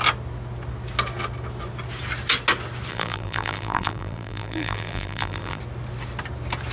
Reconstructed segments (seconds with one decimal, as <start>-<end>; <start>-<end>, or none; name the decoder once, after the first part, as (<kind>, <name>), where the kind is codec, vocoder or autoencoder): 2.9-5.6 (vocoder, BigVGAN v2)